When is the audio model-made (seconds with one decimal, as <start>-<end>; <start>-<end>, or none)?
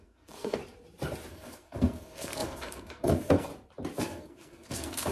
0.0-0.6; 1.3-3.5; 4.0-5.1